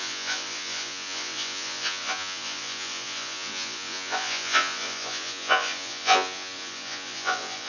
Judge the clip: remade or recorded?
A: remade